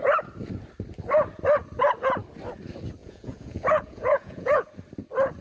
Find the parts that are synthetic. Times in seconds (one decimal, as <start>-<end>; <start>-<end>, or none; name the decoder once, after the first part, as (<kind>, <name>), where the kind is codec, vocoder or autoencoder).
3.0-4.7 (vocoder, Vocos)